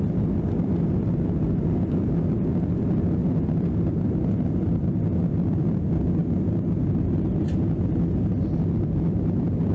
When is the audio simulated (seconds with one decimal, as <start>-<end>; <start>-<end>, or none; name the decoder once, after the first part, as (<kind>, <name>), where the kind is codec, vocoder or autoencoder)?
none